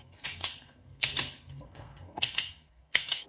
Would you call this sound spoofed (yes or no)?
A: yes